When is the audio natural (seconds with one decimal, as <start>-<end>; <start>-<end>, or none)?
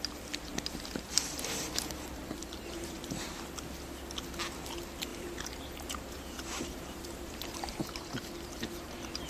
0.0-2.4; 3.3-5.1